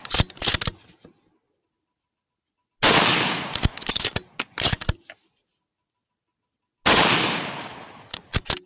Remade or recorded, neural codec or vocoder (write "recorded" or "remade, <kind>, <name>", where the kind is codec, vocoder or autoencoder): recorded